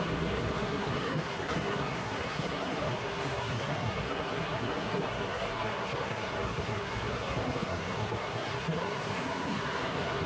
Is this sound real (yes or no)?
no